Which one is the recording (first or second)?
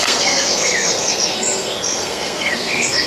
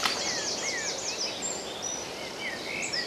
second